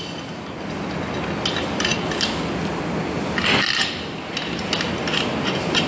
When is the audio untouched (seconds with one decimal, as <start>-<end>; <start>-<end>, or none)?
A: 0.0-5.9